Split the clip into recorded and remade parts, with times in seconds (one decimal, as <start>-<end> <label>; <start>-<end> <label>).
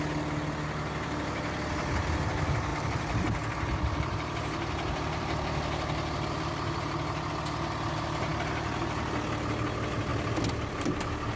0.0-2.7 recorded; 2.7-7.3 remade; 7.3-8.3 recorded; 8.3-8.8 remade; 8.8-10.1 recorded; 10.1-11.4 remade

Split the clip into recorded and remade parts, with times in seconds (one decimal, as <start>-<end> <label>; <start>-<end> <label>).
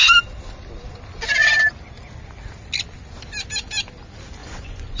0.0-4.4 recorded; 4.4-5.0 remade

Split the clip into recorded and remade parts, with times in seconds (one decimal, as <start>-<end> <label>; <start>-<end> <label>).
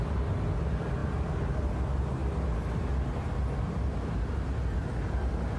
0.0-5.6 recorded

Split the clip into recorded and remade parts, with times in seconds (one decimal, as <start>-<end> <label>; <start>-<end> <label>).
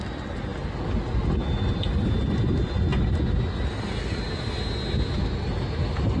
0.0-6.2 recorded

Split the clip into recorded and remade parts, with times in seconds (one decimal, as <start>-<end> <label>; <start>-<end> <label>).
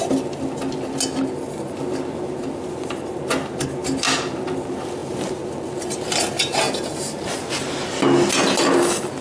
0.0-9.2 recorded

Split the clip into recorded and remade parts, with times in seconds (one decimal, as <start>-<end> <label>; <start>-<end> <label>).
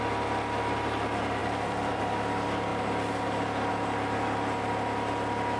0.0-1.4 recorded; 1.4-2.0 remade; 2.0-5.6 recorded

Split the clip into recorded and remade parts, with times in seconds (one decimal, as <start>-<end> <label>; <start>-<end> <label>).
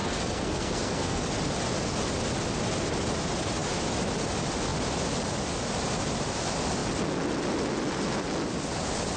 0.0-1.2 remade; 1.2-9.2 recorded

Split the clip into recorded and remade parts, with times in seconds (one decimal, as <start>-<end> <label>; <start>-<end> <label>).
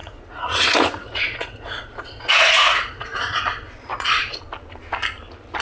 0.0-3.4 remade; 3.4-3.9 recorded; 3.9-4.4 remade; 4.4-5.6 recorded